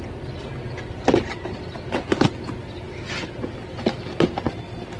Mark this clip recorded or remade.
recorded